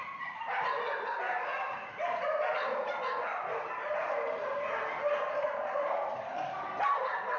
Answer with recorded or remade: recorded